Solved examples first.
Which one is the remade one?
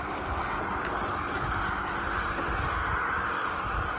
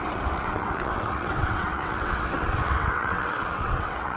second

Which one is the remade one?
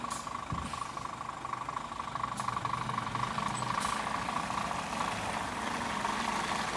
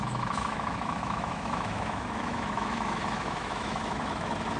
second